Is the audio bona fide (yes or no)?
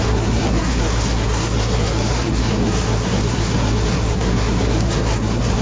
no